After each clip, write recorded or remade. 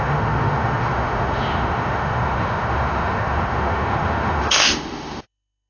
remade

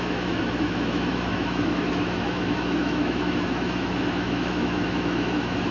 remade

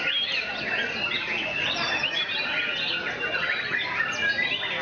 recorded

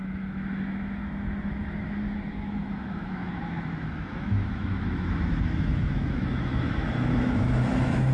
remade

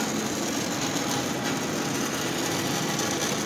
recorded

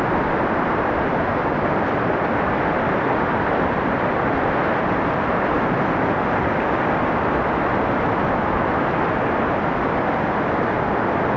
recorded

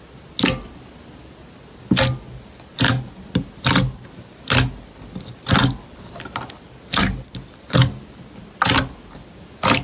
recorded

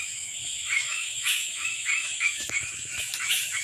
remade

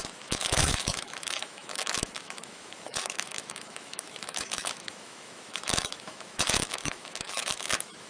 remade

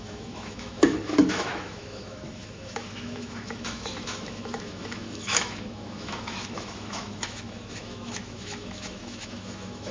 remade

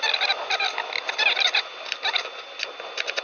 recorded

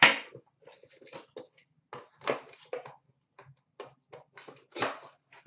recorded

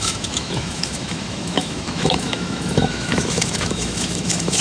remade